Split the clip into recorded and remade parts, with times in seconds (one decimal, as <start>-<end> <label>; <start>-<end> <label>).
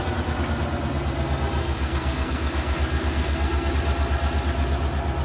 0.0-1.6 recorded; 1.6-3.7 remade; 3.7-5.2 recorded